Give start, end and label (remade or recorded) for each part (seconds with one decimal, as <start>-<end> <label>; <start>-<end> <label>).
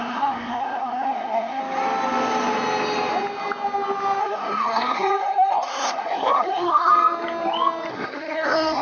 0.0-1.6 remade; 1.6-4.2 recorded; 4.2-6.9 remade; 6.9-7.9 recorded; 7.9-8.8 remade